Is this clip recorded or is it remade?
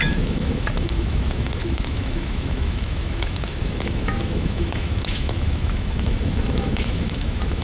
remade